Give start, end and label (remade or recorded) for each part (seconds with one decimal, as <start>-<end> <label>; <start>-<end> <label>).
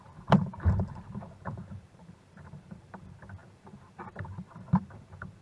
0.0-5.4 remade